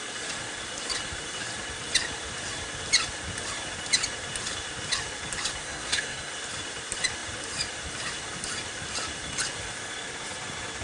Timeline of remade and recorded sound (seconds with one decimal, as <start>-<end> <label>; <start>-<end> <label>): 0.0-5.6 recorded; 5.6-6.3 remade; 6.3-10.8 recorded